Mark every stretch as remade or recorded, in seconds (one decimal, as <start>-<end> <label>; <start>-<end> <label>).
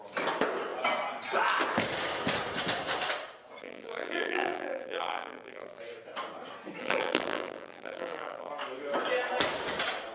0.0-3.6 recorded; 3.6-5.8 remade; 5.8-6.8 recorded; 6.8-8.5 remade; 8.5-10.1 recorded